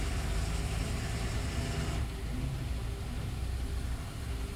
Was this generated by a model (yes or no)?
no